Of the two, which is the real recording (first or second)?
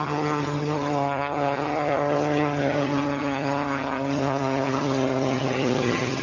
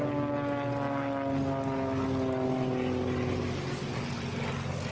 second